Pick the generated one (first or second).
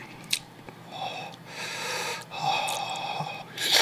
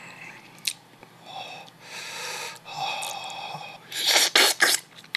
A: first